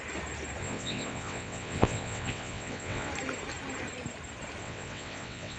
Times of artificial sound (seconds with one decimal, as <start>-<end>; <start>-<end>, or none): 0.6-3.1; 4.6-5.6